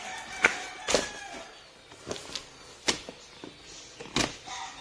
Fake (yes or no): no